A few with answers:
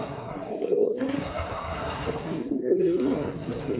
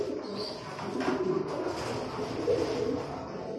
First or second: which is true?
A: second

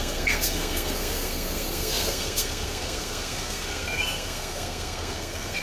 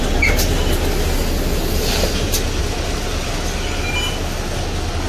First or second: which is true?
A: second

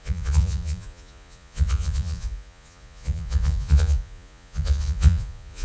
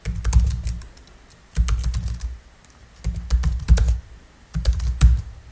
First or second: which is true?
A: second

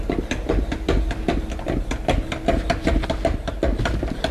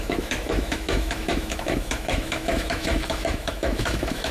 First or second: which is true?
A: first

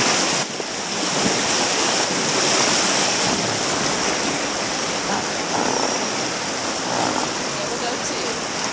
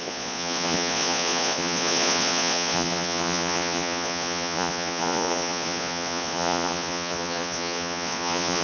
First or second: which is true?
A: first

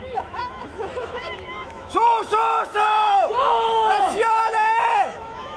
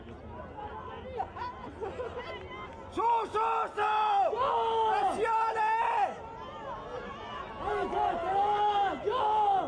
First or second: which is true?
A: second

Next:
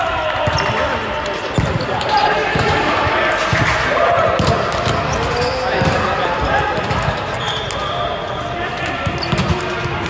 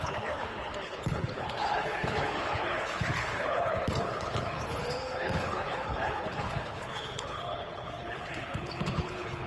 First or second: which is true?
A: first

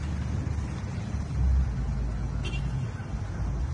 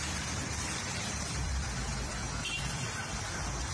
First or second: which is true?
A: first